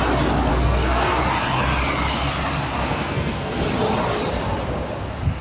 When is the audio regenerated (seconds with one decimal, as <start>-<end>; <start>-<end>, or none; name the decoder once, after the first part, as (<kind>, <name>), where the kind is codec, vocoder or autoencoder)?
0.5-1.2 (codec, SNAC); 2.8-3.6